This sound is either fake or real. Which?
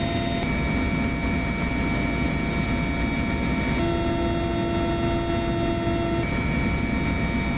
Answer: real